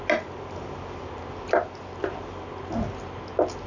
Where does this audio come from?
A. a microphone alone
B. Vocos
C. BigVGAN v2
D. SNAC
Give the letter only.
A